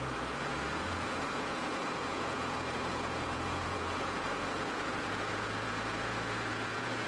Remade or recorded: remade